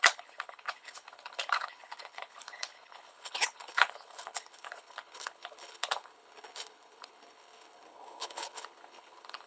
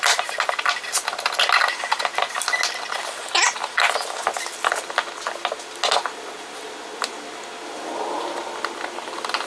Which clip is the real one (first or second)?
second